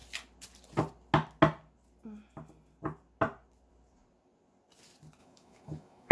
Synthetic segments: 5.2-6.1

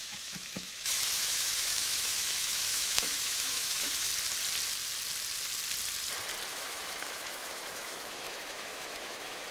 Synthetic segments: 0.0-4.1; 6.5-9.5

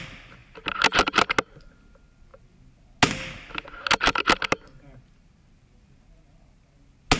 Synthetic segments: none

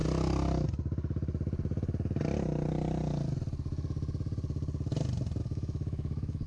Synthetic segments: 5.4-6.5